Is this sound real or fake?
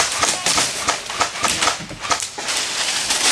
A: real